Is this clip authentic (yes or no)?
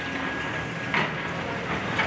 yes